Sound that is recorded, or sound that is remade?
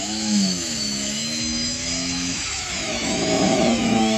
remade